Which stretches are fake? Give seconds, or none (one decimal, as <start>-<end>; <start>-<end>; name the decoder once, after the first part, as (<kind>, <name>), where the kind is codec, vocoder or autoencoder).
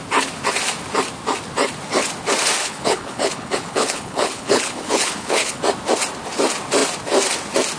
2.6-5.6 (codec, HILCodec)